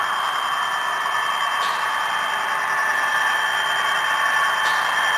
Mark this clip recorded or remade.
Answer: recorded